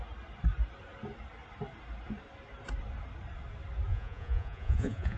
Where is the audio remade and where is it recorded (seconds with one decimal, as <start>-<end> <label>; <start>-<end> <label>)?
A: 0.0-3.9 recorded; 3.9-5.2 remade